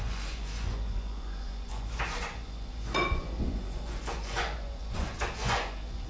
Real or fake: fake